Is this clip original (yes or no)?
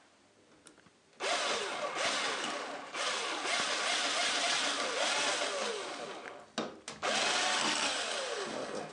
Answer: yes